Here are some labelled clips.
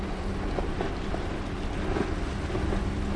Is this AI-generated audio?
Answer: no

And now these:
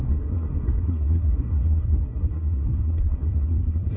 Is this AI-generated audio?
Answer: yes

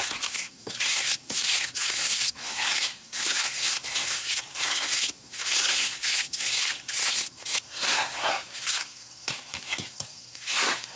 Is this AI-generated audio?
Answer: yes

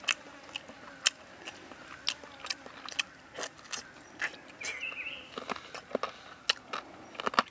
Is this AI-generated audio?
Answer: no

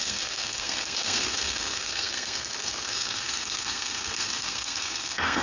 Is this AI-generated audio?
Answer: yes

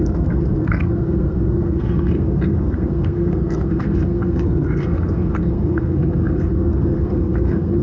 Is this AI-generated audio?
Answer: yes